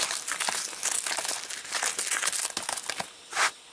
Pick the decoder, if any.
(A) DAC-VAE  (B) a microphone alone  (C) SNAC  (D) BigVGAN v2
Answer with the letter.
B